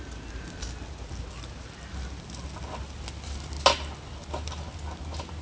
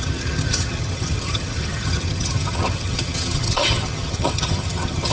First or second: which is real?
first